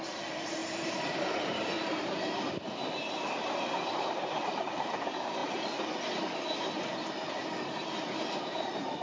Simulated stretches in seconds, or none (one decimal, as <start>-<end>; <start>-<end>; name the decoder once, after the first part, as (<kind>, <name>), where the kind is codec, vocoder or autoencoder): 0.0-5.4 (vocoder, BigVGAN v2); 8.4-9.0